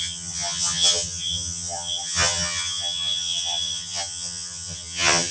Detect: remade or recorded remade